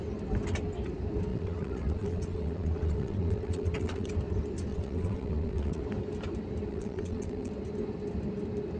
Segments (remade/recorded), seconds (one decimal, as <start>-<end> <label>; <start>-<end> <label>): 0.0-1.3 recorded; 1.3-4.1 remade; 4.1-4.7 recorded; 4.7-5.8 remade; 5.8-6.7 recorded; 6.7-7.5 remade; 7.5-8.8 recorded